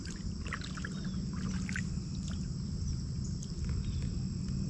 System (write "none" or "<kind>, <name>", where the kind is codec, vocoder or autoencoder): none